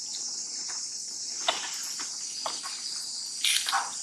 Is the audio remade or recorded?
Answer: recorded